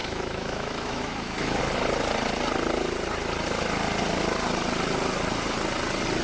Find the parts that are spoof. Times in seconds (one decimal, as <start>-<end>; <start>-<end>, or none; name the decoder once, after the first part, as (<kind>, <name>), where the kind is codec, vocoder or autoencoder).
0.0-1.6 (autoencoder, DAC-VAE)